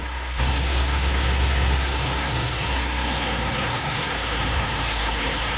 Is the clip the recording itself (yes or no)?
no